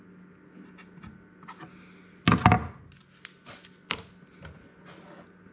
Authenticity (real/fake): real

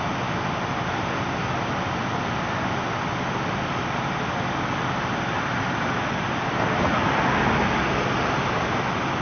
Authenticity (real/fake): real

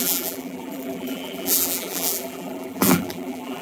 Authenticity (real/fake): fake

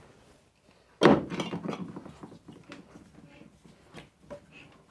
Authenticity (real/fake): real